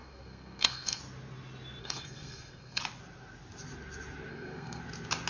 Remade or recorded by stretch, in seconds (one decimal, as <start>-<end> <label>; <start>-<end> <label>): 0.0-1.0 remade; 1.0-1.8 recorded; 1.8-2.8 remade; 2.8-4.3 recorded; 4.3-4.8 remade; 4.8-5.3 recorded